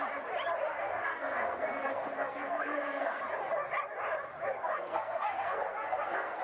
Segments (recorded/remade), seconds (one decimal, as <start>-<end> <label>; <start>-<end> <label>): 0.0-0.7 recorded; 0.7-3.2 remade; 3.2-4.6 recorded; 4.6-6.4 remade

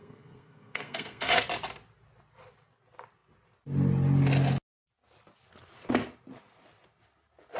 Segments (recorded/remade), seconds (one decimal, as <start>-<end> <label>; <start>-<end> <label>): 0.0-1.3 remade; 1.3-7.6 recorded